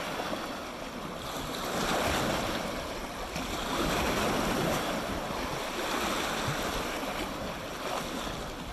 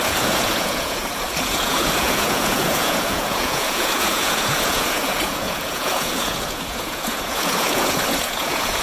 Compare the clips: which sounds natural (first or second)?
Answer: first